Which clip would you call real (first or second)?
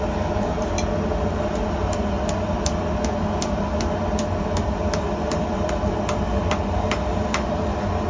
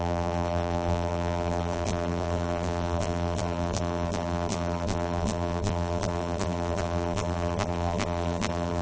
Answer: first